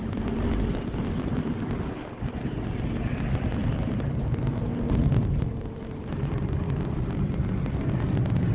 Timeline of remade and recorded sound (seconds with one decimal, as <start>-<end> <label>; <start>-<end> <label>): 0.0-8.5 recorded